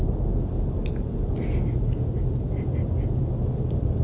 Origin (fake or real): real